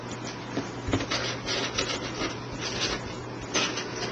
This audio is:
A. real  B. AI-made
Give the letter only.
A